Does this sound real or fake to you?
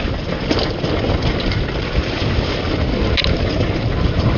real